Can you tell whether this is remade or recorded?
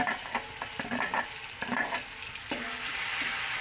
recorded